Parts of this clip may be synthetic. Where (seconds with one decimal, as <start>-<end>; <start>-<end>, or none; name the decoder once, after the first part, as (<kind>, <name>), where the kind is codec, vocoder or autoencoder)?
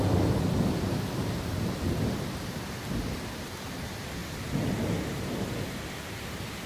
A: 0.5-3.0 (vocoder, BigVGAN v2); 4.2-5.7